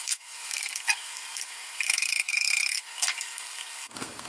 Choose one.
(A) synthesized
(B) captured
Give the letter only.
A